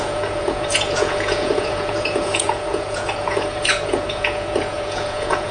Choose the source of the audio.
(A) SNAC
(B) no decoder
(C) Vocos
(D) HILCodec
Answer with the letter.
C